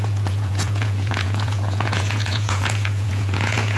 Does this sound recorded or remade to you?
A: remade